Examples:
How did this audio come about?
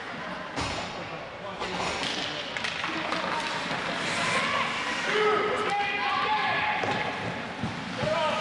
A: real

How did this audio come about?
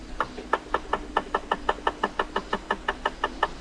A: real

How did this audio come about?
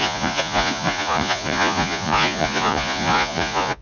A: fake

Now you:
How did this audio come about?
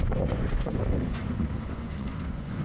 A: fake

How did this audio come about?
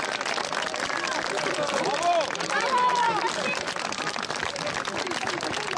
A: real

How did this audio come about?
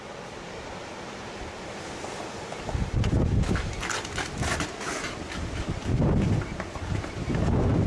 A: real